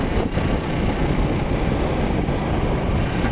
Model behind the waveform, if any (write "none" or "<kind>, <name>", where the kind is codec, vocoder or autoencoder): none